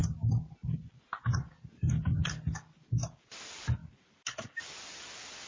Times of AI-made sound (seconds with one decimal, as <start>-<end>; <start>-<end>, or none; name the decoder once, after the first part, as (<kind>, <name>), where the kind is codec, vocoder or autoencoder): none